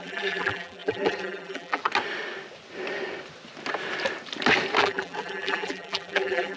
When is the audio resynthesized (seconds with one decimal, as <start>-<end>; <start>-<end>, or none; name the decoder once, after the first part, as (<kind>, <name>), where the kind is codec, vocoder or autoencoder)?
0.0-1.8 (vocoder, BigVGAN v2); 4.8-6.6

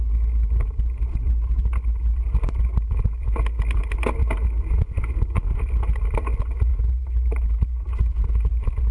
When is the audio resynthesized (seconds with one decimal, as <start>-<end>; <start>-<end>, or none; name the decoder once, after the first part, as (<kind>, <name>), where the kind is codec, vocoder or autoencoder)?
4.7-5.4 (vocoder, BigVGAN v2); 6.7-8.5

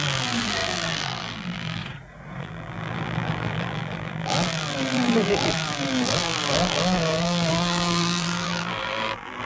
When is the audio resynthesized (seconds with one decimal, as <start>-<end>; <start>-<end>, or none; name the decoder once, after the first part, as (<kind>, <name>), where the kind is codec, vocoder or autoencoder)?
0.0-1.8 (vocoder, BigVGAN v2); 2.4-9.5

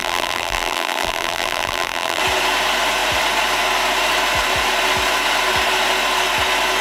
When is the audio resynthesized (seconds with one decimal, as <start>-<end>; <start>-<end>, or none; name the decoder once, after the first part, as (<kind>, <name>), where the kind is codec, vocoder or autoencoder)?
0.0-2.2 (vocoder, BigVGAN v2)